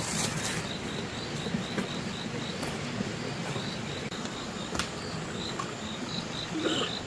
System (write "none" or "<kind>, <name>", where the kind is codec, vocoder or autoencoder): none